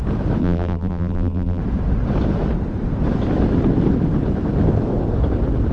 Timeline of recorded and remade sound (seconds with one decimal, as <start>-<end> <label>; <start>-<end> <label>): 0.0-0.4 recorded; 0.4-1.6 remade; 1.6-5.7 recorded

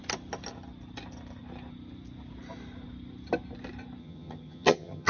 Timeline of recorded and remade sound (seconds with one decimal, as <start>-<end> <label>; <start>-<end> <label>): 0.0-4.0 recorded; 4.0-5.1 remade

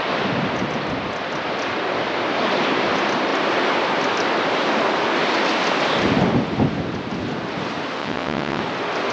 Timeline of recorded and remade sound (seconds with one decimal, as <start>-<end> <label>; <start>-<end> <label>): 0.0-8.0 recorded; 8.0-8.6 remade; 8.6-9.1 recorded

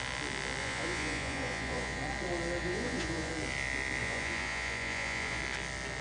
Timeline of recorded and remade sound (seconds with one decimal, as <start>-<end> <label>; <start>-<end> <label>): 0.0-0.6 recorded; 0.6-2.0 remade; 2.0-2.6 recorded; 2.6-3.3 remade; 3.3-4.0 recorded; 4.0-5.4 remade; 5.4-6.0 recorded